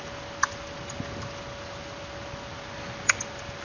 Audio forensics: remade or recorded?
recorded